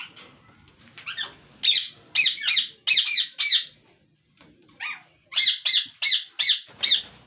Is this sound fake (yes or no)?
no